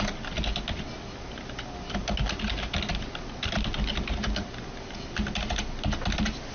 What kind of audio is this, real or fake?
real